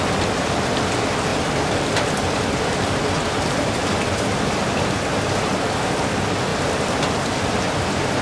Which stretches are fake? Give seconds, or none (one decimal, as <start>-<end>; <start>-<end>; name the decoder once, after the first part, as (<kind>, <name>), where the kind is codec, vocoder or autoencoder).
1.3-5.3 (vocoder, BigVGAN v2); 6.5-8.2

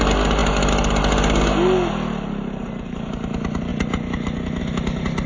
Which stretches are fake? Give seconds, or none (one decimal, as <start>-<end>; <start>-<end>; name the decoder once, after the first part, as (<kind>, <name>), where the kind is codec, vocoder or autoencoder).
3.7-4.6 (vocoder, BigVGAN v2)